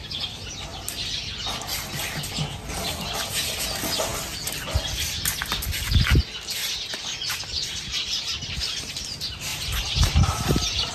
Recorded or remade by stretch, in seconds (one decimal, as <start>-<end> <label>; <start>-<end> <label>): 0.0-9.5 recorded; 9.5-10.9 remade